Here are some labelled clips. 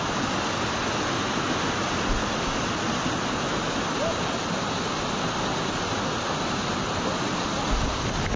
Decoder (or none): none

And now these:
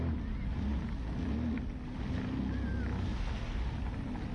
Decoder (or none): none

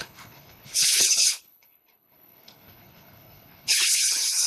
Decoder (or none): codec, HILCodec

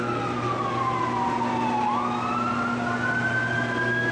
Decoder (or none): none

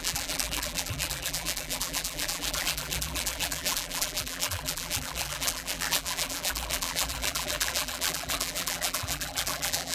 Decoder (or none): vocoder, BigVGAN v2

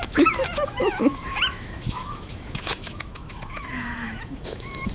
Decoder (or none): autoencoder, DAC-VAE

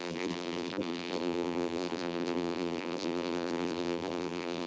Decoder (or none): vocoder, BigVGAN v2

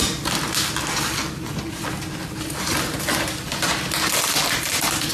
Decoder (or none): none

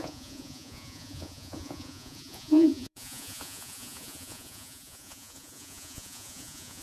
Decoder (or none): vocoder, Vocos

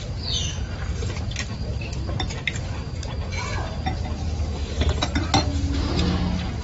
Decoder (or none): none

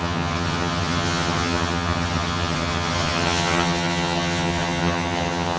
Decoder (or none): vocoder, HiFi-GAN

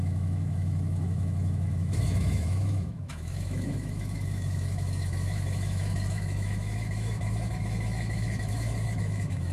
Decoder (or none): autoencoder, DAC-VAE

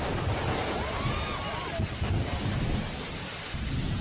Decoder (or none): none